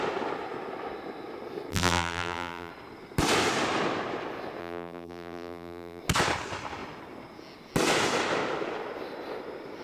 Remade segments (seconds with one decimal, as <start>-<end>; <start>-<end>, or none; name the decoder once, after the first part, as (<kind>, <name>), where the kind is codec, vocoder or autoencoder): 1.7-2.7 (vocoder, BigVGAN v2); 4.6-6.0